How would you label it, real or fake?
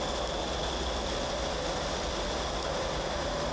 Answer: real